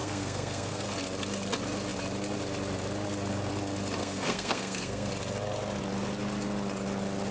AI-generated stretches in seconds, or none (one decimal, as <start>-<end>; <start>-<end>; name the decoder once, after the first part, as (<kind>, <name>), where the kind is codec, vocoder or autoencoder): 0.0-0.9 (codec, SNAC); 4.0-5.1